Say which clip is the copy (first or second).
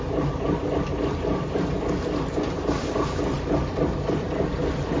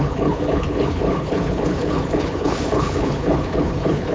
second